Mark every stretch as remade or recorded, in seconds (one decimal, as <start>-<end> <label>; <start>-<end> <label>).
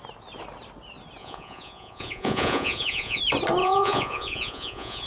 0.0-1.2 recorded; 1.2-3.2 remade; 3.2-3.6 recorded; 3.6-5.1 remade